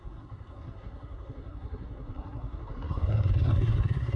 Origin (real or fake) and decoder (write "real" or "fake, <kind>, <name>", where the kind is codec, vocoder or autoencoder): fake, codec, SNAC